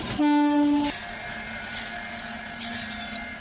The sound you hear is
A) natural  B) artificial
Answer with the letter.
A